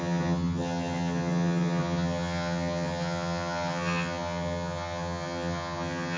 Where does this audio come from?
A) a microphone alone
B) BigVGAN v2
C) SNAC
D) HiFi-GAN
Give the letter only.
D